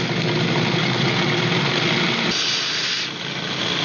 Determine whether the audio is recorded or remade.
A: recorded